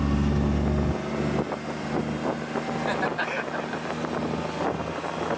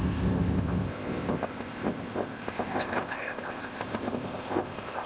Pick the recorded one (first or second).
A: first